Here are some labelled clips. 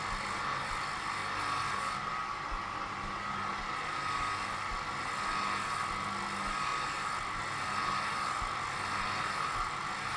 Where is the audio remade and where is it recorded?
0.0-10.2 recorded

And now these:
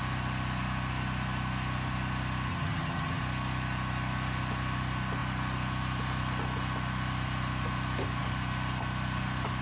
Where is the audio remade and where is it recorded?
0.0-2.5 recorded; 2.5-3.2 remade; 3.2-9.6 recorded

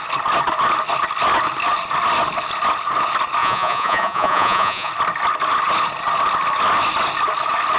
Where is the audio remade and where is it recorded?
0.0-3.4 recorded; 3.4-4.9 remade; 4.9-7.8 recorded

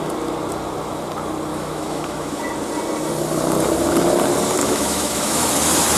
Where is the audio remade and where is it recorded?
0.0-1.5 recorded; 1.5-2.4 remade; 2.4-4.6 recorded; 4.6-5.5 remade; 5.5-6.0 recorded

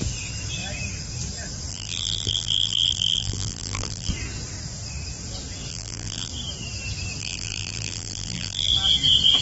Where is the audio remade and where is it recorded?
0.0-1.7 recorded; 1.7-4.1 remade; 4.1-5.7 recorded; 5.7-6.3 remade; 6.3-7.2 recorded; 7.2-8.7 remade; 8.7-9.4 recorded

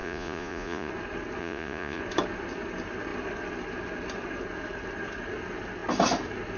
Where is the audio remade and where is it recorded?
0.0-0.9 remade; 0.9-1.4 recorded; 1.4-2.0 remade; 2.0-6.6 recorded